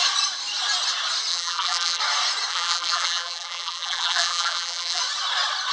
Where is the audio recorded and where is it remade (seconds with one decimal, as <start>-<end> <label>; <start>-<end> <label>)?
0.0-1.3 recorded; 1.3-2.0 remade; 2.0-2.5 recorded; 2.5-5.0 remade; 5.0-5.7 recorded